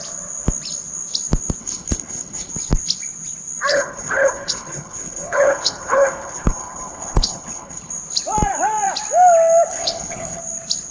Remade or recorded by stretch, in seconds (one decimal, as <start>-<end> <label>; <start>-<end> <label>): 0.0-1.6 recorded; 1.6-2.5 remade; 2.5-3.7 recorded; 3.7-7.9 remade; 7.9-9.7 recorded; 9.7-10.4 remade; 10.4-10.9 recorded